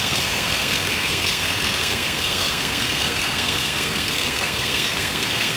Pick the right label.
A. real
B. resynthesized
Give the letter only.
B